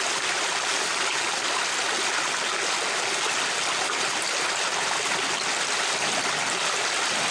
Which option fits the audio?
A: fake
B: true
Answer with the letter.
B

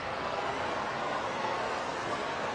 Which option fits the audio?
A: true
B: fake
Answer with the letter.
B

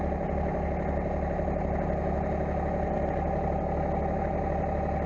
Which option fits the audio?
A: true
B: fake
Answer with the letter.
A